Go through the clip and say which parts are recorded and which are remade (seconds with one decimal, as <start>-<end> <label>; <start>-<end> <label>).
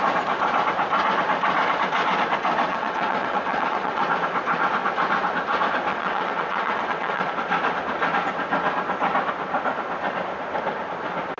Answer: 0.0-2.7 recorded; 2.7-4.0 remade; 4.0-5.9 recorded; 5.9-7.3 remade; 7.3-11.4 recorded